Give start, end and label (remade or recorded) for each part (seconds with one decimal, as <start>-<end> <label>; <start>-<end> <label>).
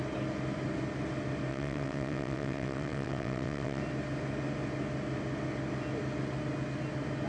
0.0-1.5 recorded; 1.5-3.8 remade; 3.8-7.3 recorded